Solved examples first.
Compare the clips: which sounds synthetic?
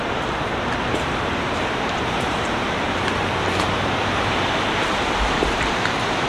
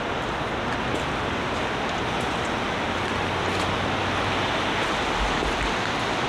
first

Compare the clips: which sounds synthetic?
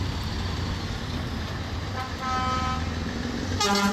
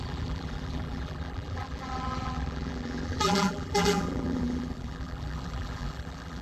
second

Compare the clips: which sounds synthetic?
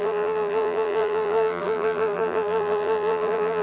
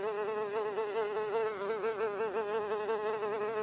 first